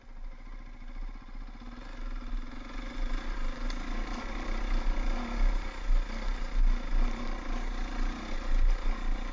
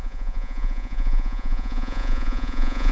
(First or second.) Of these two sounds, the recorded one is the first